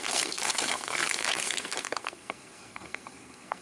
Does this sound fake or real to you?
fake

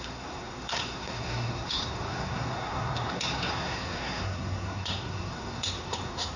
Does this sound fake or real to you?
fake